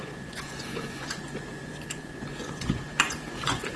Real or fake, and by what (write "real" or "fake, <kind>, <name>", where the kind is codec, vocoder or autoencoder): fake, vocoder, Vocos